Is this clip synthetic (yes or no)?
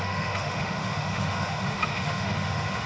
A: yes